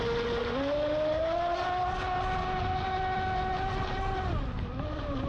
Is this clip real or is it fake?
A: real